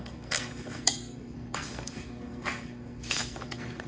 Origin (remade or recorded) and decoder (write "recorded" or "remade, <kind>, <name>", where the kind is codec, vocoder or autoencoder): remade, codec, SNAC